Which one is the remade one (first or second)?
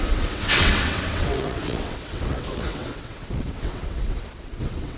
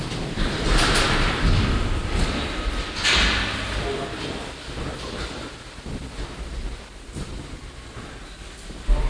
first